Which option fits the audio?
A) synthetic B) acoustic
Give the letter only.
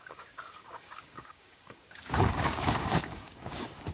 A